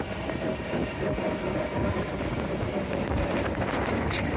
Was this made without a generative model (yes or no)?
yes